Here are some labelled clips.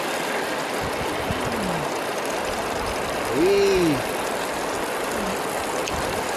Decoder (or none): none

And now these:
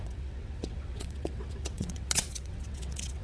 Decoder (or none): vocoder, WaveNeXt